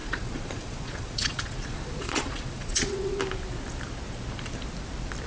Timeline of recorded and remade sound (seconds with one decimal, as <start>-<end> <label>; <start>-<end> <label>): 0.0-3.2 remade; 3.2-5.3 recorded